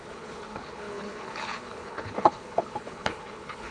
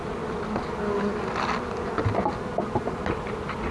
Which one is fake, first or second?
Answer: first